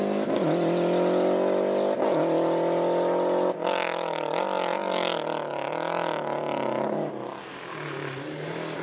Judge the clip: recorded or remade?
recorded